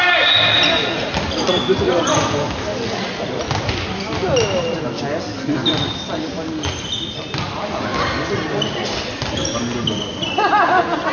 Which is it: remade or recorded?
recorded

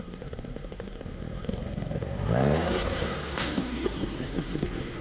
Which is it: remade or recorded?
remade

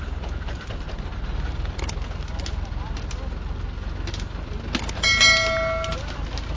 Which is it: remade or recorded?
recorded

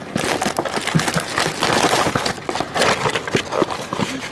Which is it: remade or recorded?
recorded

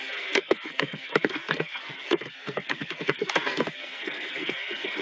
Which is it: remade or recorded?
remade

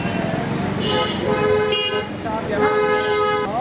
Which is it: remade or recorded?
recorded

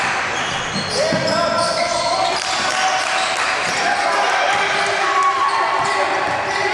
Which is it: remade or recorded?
recorded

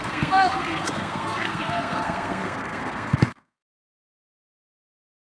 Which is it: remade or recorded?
remade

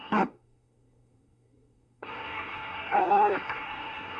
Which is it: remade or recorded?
remade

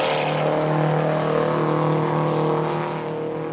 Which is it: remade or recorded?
recorded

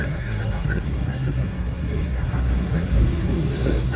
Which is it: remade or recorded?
remade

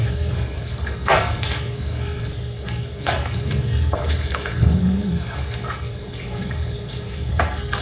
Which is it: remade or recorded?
remade